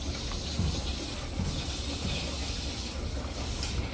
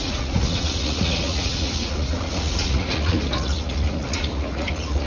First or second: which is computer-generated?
second